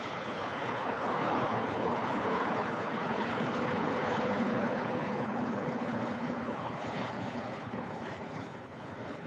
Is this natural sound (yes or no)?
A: no